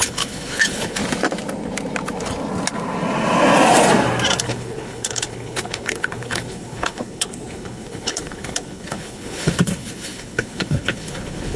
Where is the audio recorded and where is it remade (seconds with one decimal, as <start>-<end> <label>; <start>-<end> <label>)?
0.0-1.0 remade; 1.0-4.4 recorded; 4.4-11.6 remade